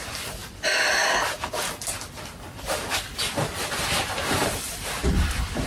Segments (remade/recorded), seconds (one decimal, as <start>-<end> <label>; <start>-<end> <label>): 0.0-0.4 remade; 0.4-3.8 recorded; 3.8-5.7 remade

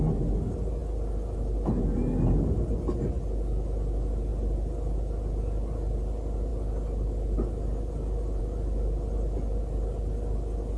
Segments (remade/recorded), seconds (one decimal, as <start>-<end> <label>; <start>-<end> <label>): 0.0-10.8 recorded

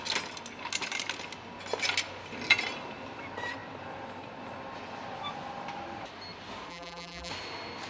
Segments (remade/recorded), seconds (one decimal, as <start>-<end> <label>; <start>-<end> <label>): 0.0-6.7 recorded; 6.7-7.3 remade; 7.3-7.9 recorded

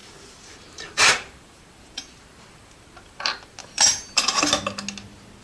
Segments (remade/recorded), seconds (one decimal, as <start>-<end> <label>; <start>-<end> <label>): 0.0-3.2 remade; 3.2-3.6 recorded; 3.6-4.5 remade; 4.5-5.4 recorded

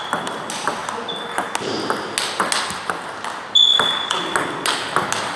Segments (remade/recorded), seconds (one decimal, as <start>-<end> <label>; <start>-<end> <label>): 0.0-5.4 recorded

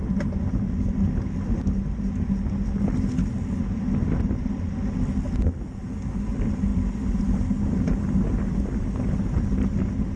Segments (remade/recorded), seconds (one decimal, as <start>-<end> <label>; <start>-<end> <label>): 0.0-10.2 recorded

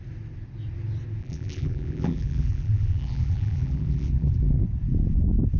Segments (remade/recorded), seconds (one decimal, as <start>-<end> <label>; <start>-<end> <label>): 0.0-1.2 recorded; 1.2-4.6 remade; 4.6-5.6 recorded

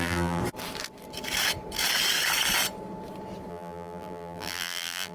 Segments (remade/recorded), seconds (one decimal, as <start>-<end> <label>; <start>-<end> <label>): 0.0-0.4 remade; 0.4-3.5 recorded; 3.5-5.1 remade